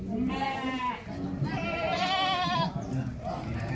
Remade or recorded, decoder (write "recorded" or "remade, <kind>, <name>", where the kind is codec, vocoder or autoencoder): remade, vocoder, BigVGAN v2